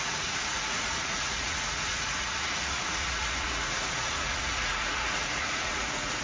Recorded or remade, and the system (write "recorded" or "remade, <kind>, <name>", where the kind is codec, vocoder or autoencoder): remade, vocoder, Vocos